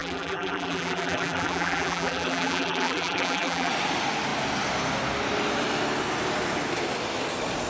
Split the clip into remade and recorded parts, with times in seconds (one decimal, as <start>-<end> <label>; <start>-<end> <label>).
0.0-3.7 remade; 3.7-7.7 recorded